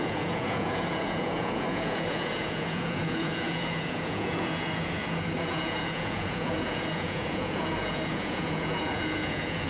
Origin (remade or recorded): remade